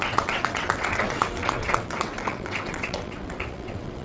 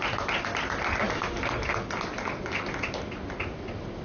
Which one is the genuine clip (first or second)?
second